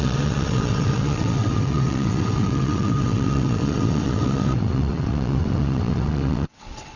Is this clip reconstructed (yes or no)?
yes